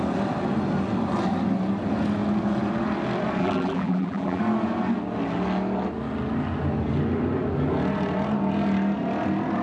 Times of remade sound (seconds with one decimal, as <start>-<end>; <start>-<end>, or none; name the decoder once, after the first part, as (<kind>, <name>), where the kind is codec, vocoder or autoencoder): 3.4-4.4 (vocoder, BigVGAN v2)